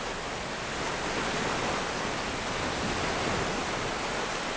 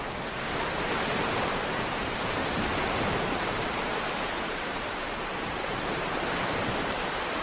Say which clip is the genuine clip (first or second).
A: first